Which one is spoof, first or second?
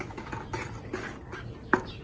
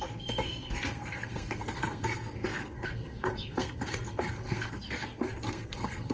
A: second